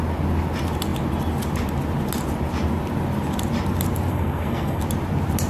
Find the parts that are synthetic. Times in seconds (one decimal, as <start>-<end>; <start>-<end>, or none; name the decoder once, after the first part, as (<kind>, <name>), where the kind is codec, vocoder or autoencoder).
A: 4.1-4.8 (codec, SNAC)